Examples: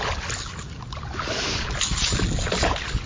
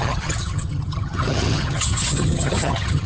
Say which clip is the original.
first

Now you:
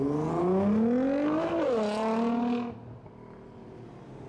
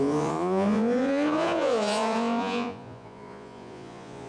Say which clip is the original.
first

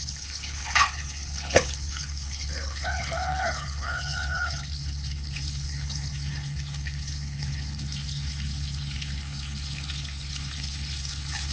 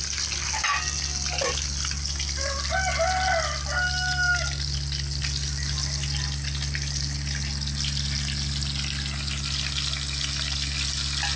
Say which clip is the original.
second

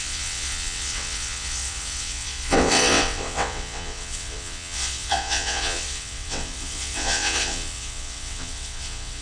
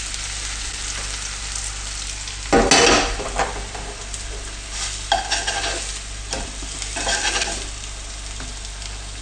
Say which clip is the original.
second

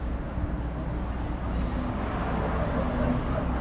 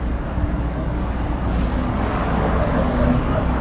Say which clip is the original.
first